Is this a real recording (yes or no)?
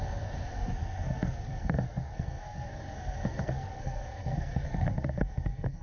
no